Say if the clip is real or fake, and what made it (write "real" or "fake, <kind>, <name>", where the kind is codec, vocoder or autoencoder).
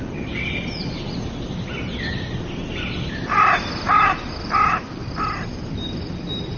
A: real